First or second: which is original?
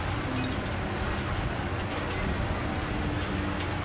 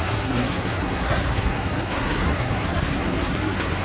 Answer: first